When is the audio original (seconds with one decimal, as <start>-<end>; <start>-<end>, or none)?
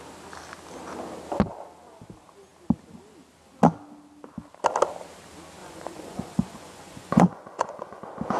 0.0-5.6; 8.0-8.4